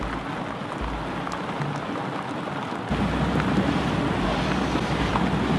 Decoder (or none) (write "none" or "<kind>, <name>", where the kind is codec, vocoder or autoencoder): none